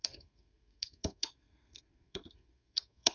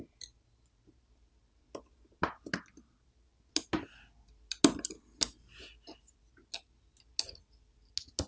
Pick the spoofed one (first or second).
first